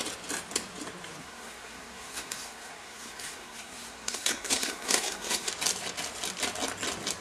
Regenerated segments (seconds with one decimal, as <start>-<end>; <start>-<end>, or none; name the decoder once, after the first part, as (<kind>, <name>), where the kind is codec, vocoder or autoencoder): 1.2-5.5 (codec, SNAC)